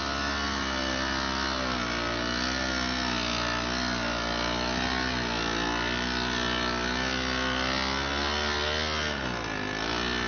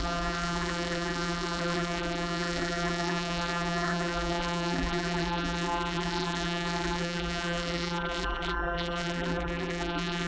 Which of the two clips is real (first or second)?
first